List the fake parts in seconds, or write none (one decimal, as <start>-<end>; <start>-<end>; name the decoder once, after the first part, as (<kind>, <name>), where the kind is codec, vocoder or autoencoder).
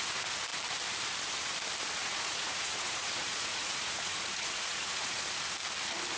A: 2.0-5.2 (vocoder, Vocos)